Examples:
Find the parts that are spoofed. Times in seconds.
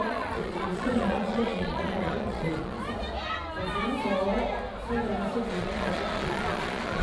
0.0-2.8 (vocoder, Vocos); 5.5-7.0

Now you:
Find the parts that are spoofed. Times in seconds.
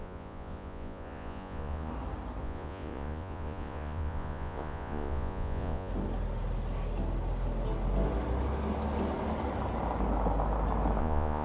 0.0-1.9 (vocoder, Vocos); 2.4-5.9; 11.0-11.4